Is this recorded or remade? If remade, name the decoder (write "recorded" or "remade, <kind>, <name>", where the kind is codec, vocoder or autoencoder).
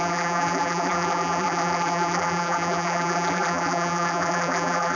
remade, vocoder, BigVGAN v2